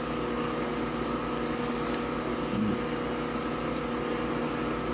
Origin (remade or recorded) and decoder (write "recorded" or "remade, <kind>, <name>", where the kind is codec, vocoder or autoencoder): recorded